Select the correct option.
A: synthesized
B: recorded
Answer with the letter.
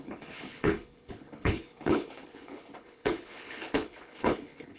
A